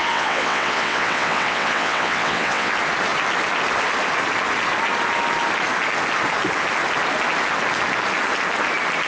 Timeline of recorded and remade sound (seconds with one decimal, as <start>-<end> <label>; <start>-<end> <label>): 0.0-2.7 remade; 2.7-9.1 recorded